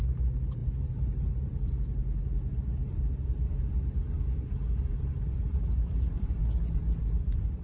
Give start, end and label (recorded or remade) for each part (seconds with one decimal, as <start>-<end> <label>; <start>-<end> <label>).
0.0-2.0 remade; 2.0-4.9 recorded; 4.9-6.4 remade; 6.4-7.0 recorded; 7.0-7.6 remade